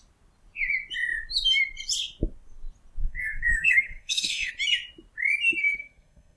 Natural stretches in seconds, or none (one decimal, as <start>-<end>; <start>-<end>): 0.0-3.0; 4.5-5.6